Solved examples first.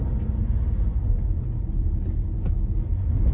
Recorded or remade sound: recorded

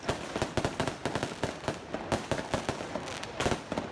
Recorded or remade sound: recorded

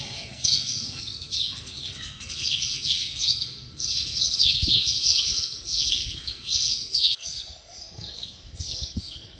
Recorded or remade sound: remade